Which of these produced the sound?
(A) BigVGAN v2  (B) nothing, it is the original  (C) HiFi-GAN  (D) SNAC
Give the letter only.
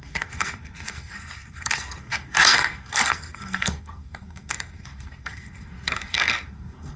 D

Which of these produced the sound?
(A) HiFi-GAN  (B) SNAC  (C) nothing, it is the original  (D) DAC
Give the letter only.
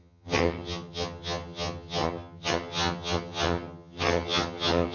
A